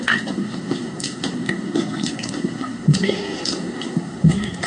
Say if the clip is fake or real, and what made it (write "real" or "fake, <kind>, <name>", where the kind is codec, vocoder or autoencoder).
fake, codec, SNAC